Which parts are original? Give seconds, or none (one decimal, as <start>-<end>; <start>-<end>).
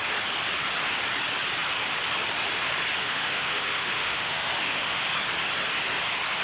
0.0-3.0; 5.0-6.4